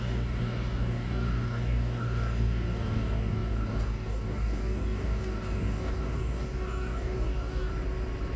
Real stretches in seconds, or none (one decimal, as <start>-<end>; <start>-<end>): 7.7-8.4

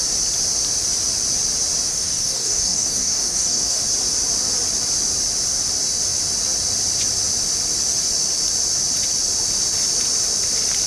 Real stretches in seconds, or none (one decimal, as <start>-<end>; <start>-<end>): 0.0-1.9; 3.8-10.9

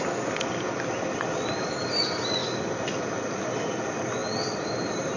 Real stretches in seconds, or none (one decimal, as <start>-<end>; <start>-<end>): 0.0-5.2

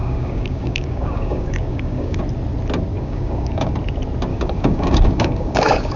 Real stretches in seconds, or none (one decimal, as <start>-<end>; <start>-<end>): 2.2-2.9; 3.7-4.3

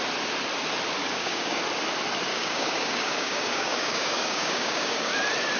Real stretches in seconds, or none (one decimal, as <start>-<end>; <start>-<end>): 0.0-1.0; 1.6-2.3; 5.1-5.6

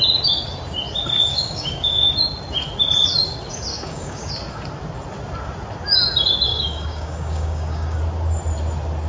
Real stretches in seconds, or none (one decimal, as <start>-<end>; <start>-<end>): 0.0-1.3; 2.1-3.7; 4.3-6.5; 8.0-9.1

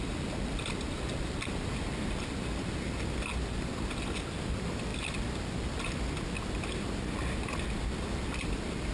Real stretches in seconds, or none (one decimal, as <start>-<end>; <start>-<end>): 0.0-8.9

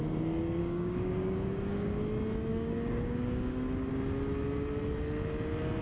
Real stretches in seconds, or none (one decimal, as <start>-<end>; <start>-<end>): 0.0-0.6; 2.0-2.5; 3.9-5.8